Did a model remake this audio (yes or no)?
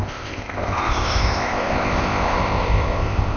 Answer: yes